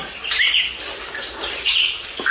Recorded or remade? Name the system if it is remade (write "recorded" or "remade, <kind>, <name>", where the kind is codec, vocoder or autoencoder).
recorded